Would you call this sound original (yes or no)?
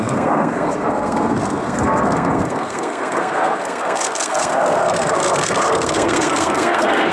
no